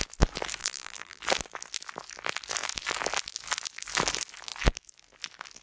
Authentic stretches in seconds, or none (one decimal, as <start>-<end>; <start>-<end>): 0.0-0.6; 1.2-5.6